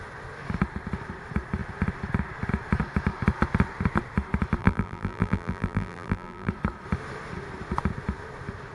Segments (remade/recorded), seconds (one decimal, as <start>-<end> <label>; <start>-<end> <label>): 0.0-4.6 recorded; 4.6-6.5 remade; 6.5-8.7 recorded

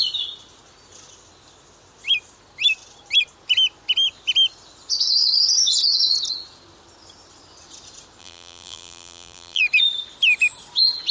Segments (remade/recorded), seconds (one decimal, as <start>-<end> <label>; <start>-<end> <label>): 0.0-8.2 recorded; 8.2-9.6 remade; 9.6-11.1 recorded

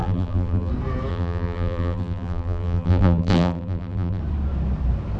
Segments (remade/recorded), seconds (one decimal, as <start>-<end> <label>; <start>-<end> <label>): 0.0-0.7 remade; 0.7-1.1 recorded; 1.1-4.2 remade; 4.2-5.2 recorded

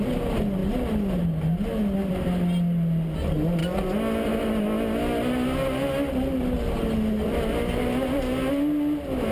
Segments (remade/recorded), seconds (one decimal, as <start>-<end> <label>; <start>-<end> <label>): 0.0-9.3 recorded

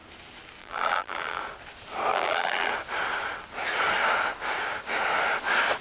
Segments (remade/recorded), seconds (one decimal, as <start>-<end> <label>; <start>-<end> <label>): 0.0-0.6 recorded; 0.6-1.4 remade; 1.4-2.1 recorded; 2.1-2.7 remade; 2.7-5.8 recorded

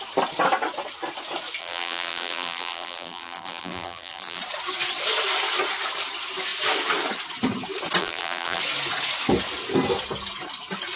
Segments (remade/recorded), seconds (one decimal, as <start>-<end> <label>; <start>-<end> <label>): 0.0-1.6 recorded; 1.6-4.4 remade; 4.4-8.0 recorded; 8.0-8.6 remade; 8.6-11.0 recorded